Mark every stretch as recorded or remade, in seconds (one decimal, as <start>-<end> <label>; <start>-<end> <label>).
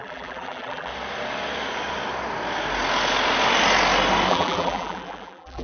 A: 0.0-0.9 remade; 0.9-4.3 recorded; 4.3-5.6 remade